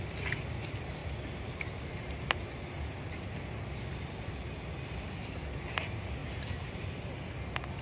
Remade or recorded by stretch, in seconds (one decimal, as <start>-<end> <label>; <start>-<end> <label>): 0.0-7.8 recorded